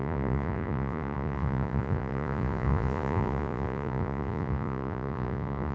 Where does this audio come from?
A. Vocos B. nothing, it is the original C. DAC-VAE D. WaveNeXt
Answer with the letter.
A